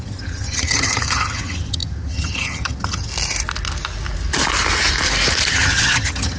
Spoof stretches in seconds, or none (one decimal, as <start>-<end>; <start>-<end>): 0.0-3.1; 5.5-6.4